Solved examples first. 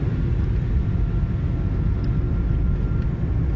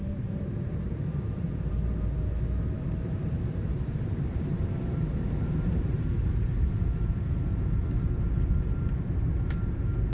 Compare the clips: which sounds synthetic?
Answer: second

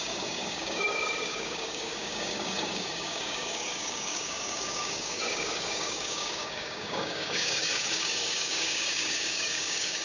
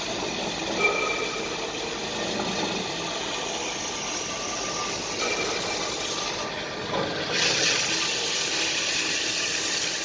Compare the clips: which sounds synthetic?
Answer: first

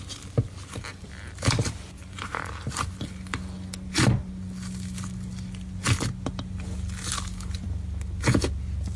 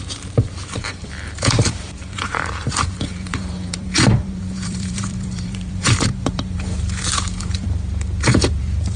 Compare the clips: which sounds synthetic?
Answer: second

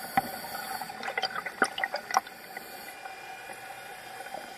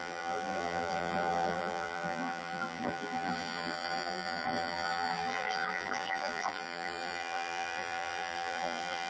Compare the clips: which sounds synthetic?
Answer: second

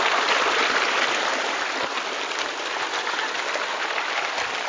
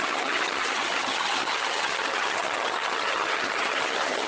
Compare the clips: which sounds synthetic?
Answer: second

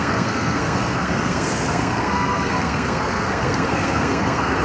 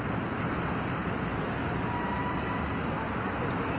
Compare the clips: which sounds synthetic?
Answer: first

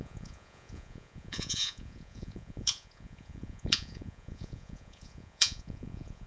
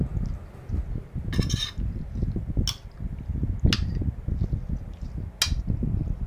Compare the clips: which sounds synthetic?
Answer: first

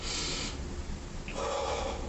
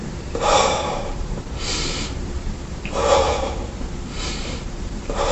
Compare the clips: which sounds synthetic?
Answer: second